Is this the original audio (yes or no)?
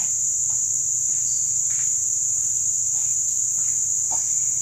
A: no